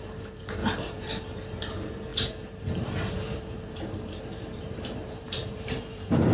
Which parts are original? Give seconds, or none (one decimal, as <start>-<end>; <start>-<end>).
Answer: none

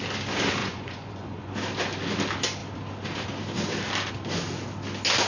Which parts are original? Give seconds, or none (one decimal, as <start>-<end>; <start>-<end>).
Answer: 0.0-0.6; 1.5-5.3